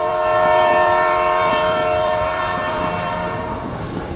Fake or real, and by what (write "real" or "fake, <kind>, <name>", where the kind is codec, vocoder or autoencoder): fake, vocoder, BigVGAN v2